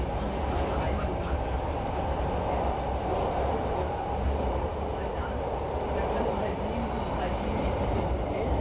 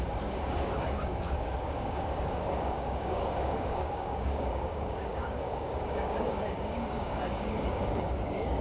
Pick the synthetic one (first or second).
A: second